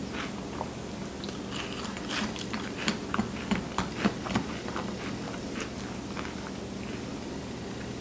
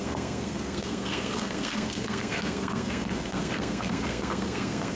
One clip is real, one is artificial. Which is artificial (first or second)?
second